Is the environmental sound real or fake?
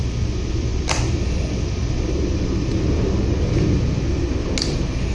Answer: real